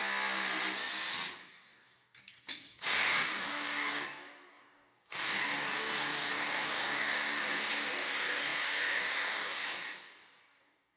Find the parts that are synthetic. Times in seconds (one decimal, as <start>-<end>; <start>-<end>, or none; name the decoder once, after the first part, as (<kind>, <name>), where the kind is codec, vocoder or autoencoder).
1.3-11.0 (codec, DAC)

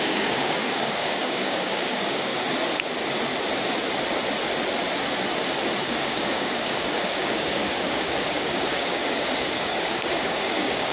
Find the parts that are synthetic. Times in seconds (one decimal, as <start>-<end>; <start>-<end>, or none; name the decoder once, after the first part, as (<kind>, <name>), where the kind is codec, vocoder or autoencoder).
0.0-2.3 (codec, DAC); 5.8-10.9

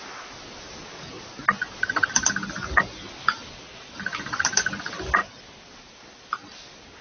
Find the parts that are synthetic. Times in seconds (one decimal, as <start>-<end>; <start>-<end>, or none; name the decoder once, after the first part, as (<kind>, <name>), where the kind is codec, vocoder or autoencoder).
none

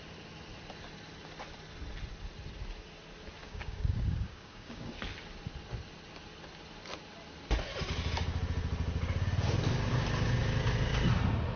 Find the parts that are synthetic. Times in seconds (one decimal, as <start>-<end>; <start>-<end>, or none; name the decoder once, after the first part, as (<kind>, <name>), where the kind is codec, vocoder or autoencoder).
3.4-4.9 (codec, DAC)

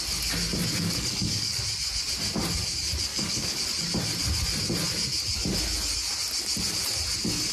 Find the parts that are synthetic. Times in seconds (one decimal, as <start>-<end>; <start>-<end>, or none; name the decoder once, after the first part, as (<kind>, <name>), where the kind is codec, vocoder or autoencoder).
0.7-1.6 (codec, DAC); 3.1-3.6

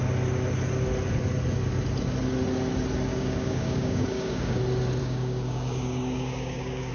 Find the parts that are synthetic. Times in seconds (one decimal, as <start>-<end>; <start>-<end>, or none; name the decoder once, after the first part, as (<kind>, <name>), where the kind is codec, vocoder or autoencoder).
3.1-4.6 (codec, DAC); 5.0-6.9

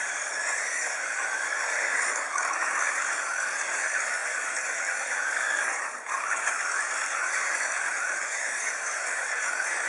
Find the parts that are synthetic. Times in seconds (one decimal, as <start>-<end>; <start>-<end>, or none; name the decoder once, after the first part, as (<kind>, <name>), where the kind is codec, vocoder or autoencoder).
0.0-9.9 (codec, DAC)

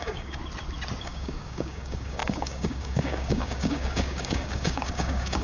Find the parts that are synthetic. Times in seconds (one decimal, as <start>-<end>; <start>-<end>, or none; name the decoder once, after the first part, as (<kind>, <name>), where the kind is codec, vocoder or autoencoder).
0.0-0.4 (codec, DAC); 1.0-5.4